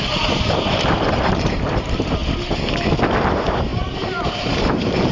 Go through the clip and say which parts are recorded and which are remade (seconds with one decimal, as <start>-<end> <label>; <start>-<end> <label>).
0.0-2.2 remade; 2.2-3.3 recorded; 3.3-5.1 remade